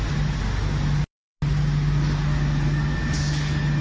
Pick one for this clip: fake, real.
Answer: real